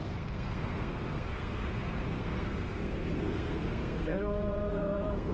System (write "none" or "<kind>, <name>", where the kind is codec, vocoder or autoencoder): codec, SNAC